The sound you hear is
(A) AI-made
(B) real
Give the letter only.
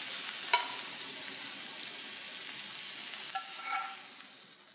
B